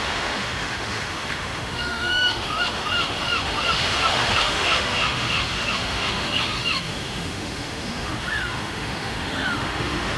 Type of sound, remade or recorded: remade